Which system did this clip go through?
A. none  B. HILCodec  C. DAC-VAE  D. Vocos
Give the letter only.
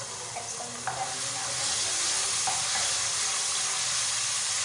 A